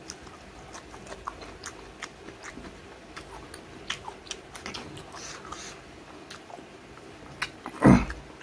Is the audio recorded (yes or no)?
yes